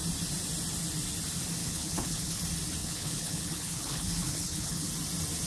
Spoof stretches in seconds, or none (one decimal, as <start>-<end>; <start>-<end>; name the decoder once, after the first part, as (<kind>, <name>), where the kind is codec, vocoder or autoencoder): 1.6-2.4 (codec, HILCodec); 2.8-4.9